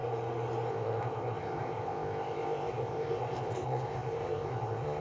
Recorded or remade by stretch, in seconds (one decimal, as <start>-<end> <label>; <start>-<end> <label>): 0.0-0.7 recorded; 0.7-5.0 remade